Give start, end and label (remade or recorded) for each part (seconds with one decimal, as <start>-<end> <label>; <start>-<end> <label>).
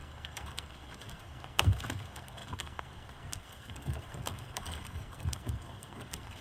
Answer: 0.0-6.4 remade